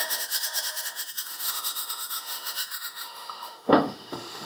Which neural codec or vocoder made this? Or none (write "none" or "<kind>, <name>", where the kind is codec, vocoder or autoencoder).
autoencoder, DAC-VAE